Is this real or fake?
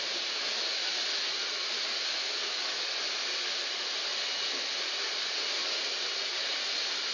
real